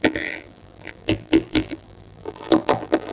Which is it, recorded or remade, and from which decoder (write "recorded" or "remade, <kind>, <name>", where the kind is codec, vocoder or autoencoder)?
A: remade, vocoder, BigVGAN v2